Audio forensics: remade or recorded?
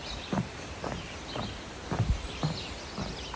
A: recorded